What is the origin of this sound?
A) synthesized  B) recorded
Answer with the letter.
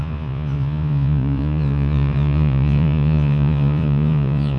A